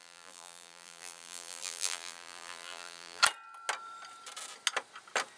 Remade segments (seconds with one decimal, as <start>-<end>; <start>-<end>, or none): 0.0-3.2